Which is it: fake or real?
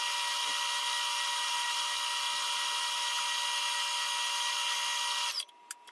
real